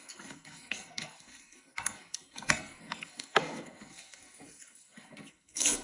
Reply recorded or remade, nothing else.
remade